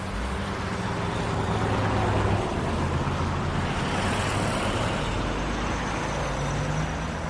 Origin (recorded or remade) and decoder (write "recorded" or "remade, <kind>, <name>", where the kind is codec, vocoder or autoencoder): recorded